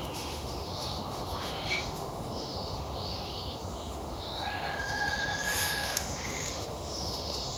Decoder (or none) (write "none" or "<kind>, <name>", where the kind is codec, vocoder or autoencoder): autoencoder, DAC-VAE